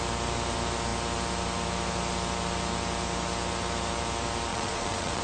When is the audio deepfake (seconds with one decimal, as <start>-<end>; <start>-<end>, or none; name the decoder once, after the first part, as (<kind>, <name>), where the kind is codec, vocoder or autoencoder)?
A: 4.5-5.2 (vocoder, Vocos)